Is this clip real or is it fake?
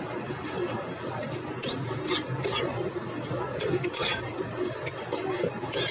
real